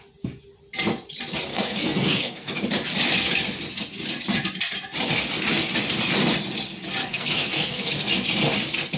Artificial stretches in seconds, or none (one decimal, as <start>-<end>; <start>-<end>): 1.5-2.5; 7.0-7.9